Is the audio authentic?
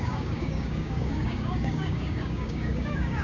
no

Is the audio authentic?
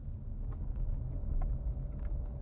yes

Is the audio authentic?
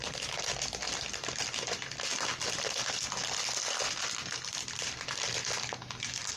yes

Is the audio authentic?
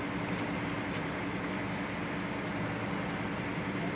yes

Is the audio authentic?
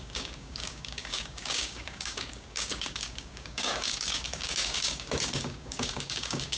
no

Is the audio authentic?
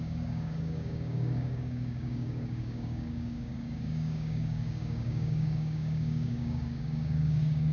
no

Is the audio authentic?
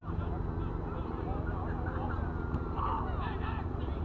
yes